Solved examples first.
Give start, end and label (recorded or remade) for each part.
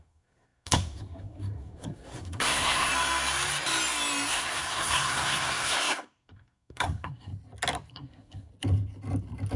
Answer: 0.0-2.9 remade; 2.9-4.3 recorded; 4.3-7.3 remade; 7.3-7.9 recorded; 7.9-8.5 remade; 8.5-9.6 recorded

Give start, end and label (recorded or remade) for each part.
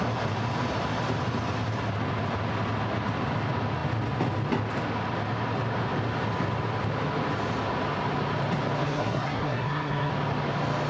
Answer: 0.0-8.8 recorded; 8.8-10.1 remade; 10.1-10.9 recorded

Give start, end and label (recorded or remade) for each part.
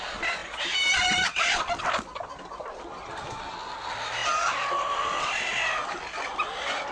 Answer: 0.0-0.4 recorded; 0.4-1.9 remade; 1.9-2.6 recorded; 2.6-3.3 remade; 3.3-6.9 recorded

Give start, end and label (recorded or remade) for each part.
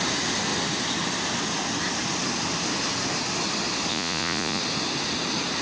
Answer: 0.0-3.9 recorded; 3.9-4.6 remade; 4.6-5.6 recorded